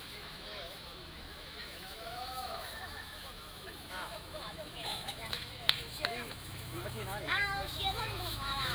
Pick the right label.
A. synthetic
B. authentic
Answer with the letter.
A